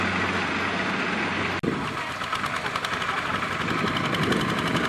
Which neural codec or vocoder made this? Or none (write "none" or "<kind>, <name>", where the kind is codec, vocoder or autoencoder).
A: none